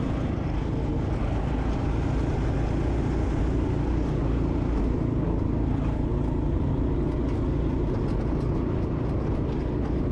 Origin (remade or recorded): recorded